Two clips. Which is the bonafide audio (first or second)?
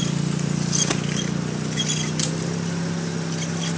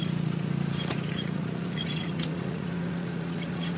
first